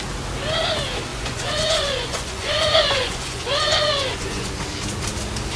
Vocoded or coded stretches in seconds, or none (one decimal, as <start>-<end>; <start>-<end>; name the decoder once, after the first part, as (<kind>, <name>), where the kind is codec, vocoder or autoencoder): 1.1-4.5 (vocoder, Vocos)